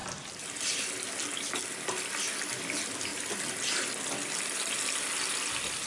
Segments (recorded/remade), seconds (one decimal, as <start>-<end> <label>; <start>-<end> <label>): 0.0-5.9 recorded